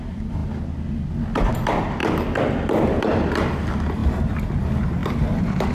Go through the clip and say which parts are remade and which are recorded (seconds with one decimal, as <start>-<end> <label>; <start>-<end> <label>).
0.0-0.4 remade; 0.4-1.5 recorded; 1.5-5.7 remade